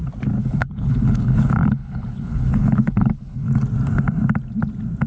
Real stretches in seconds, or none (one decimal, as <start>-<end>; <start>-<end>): 0.0-0.4; 3.5-5.1